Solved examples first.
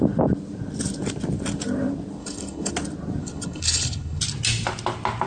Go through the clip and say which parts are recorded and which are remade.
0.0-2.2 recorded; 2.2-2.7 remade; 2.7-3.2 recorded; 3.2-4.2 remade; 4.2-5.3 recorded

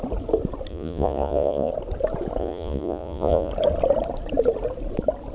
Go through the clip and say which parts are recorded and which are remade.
0.0-0.7 recorded; 0.7-1.7 remade; 1.7-2.4 recorded; 2.4-3.5 remade; 3.5-5.3 recorded

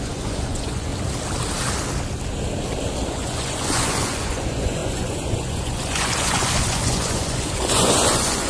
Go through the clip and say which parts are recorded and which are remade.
0.0-0.9 remade; 0.9-3.1 recorded; 3.1-8.5 remade

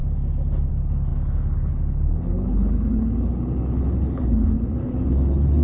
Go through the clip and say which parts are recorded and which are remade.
0.0-0.7 recorded; 0.7-5.6 remade

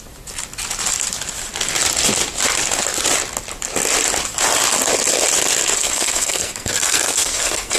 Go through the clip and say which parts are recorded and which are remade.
0.0-5.8 recorded; 5.8-7.8 remade

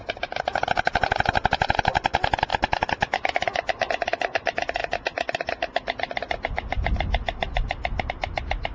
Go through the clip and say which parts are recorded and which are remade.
0.0-8.7 recorded